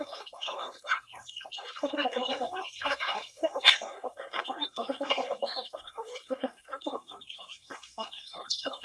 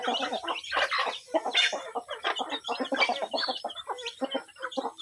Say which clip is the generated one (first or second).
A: first